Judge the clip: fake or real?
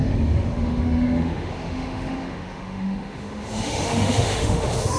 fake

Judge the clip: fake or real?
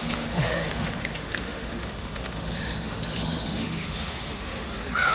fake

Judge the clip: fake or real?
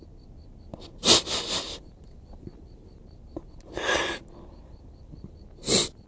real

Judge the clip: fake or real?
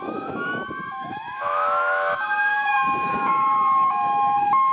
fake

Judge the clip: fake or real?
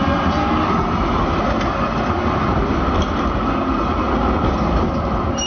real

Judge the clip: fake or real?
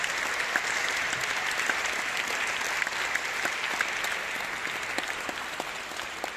real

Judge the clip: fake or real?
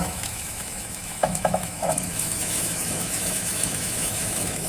fake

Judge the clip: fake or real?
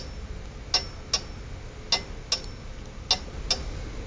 real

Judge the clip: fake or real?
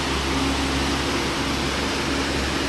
real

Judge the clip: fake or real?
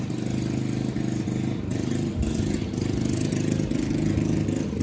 real